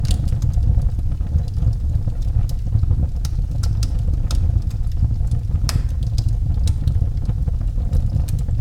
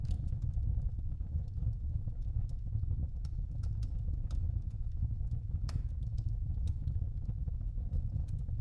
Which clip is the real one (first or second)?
first